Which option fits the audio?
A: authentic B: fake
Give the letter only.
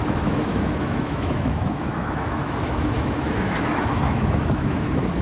B